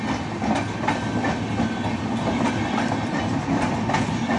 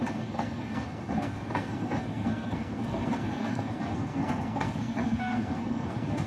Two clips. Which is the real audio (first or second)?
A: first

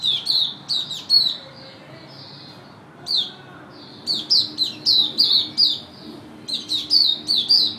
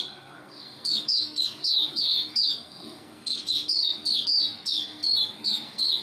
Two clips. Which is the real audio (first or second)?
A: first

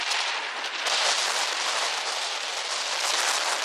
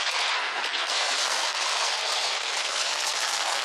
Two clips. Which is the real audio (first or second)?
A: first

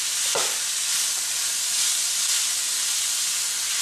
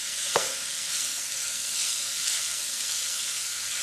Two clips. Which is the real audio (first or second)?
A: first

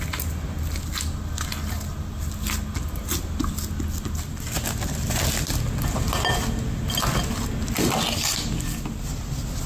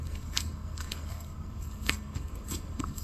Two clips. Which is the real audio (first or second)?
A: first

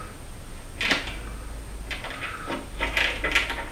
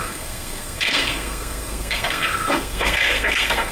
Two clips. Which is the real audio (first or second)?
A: first